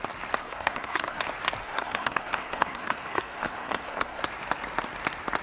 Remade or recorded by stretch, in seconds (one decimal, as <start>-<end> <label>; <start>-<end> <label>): 0.0-0.4 recorded; 0.4-1.2 remade; 1.2-1.6 recorded; 1.6-4.2 remade; 4.2-5.4 recorded